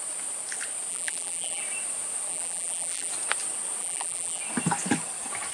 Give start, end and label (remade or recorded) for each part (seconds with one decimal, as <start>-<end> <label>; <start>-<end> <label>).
0.0-0.9 recorded; 0.9-1.6 remade; 1.6-2.3 recorded; 2.3-3.1 remade; 3.1-3.8 recorded; 3.8-4.4 remade; 4.4-5.5 recorded